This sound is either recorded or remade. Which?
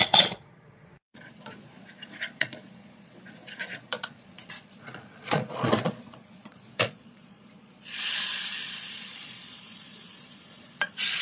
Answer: remade